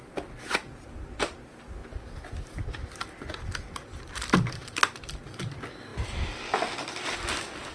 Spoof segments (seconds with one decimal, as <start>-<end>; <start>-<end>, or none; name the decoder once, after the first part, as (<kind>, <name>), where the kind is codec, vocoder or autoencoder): none